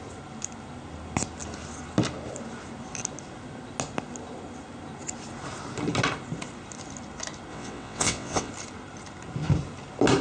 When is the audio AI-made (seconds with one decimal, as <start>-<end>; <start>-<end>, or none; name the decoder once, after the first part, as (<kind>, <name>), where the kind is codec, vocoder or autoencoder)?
7.5-8.5 (vocoder, WaveNeXt)